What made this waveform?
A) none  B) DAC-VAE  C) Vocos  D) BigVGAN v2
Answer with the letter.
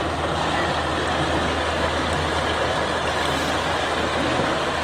A